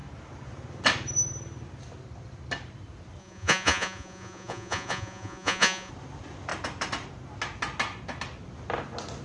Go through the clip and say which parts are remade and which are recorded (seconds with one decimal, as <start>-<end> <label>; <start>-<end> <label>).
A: 0.0-3.2 recorded; 3.2-5.9 remade; 5.9-9.2 recorded